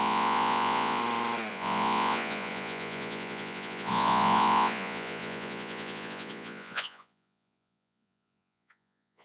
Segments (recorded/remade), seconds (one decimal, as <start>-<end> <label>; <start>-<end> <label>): 0.0-1.0 remade; 1.0-1.5 recorded; 1.5-9.2 remade